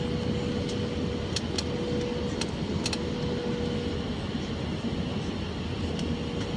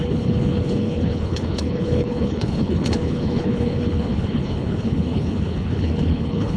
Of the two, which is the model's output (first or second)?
second